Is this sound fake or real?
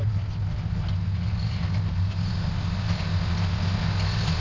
real